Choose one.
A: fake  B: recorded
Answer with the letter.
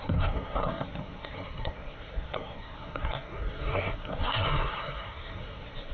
A